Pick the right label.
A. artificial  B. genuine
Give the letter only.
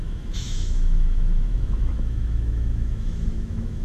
A